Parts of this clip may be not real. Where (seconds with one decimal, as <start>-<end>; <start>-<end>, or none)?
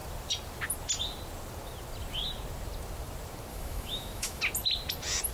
3.5-4.4